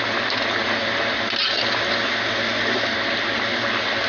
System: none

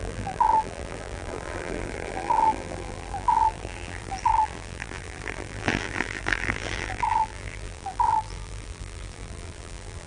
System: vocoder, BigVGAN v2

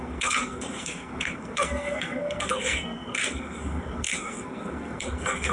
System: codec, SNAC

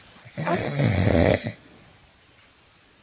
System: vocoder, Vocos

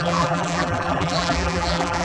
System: vocoder, BigVGAN v2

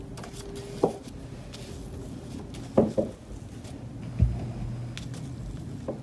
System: none